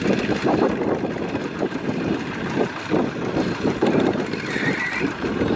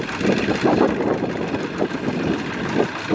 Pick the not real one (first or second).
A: first